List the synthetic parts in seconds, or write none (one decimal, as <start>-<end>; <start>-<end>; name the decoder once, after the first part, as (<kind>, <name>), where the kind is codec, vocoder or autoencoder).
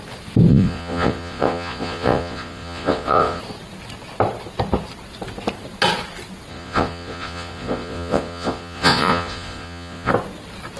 0.5-3.4 (vocoder, Vocos); 6.5-10.1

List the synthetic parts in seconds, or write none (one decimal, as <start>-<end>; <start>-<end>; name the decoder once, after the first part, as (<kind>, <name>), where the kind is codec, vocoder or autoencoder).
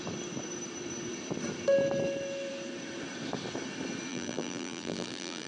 4.1-5.5 (vocoder, BigVGAN v2)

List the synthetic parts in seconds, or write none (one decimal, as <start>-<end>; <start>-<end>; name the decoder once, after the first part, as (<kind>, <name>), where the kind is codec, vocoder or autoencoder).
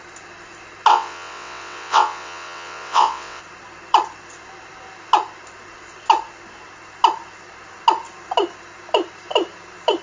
0.9-3.4 (vocoder, WaveNeXt)